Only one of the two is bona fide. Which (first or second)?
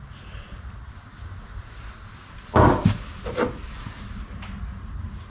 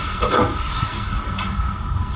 first